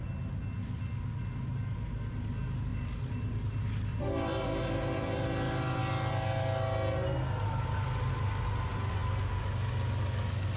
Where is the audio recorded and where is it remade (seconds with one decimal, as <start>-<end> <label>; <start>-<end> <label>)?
0.0-10.6 recorded

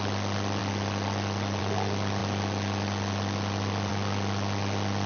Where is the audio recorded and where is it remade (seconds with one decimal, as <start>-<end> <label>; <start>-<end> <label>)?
0.0-5.1 recorded

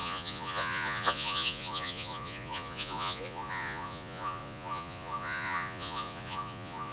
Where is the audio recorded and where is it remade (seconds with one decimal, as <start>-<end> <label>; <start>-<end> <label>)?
0.0-6.9 remade

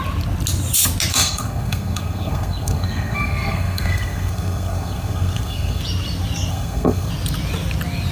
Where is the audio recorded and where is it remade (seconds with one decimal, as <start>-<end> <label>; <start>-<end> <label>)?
0.0-1.1 recorded; 1.1-5.8 remade; 5.8-6.5 recorded; 6.5-7.1 remade; 7.1-8.1 recorded